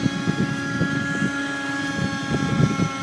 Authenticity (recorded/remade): recorded